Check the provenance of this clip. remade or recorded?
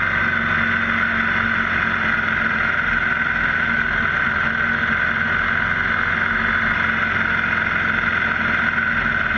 recorded